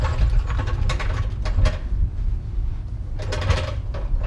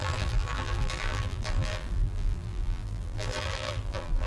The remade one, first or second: second